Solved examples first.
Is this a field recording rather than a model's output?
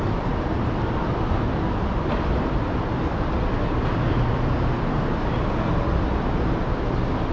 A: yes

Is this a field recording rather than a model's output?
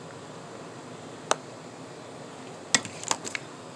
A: yes